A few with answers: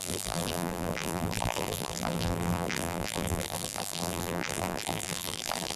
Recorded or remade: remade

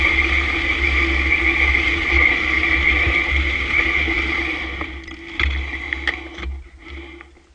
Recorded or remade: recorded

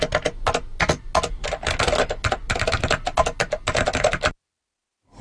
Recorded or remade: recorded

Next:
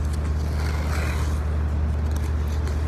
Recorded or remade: recorded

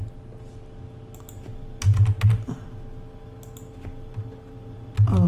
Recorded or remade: recorded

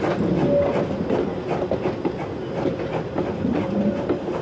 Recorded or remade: recorded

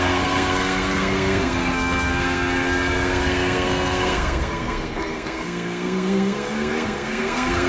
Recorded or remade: remade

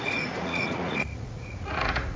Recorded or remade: remade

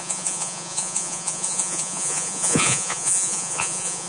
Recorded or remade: remade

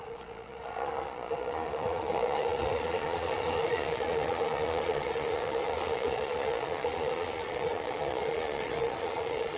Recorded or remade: remade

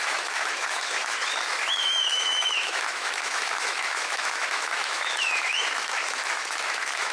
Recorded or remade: remade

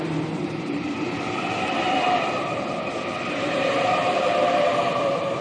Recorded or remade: remade